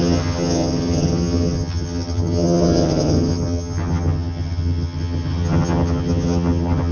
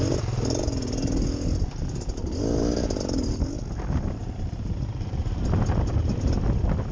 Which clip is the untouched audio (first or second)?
second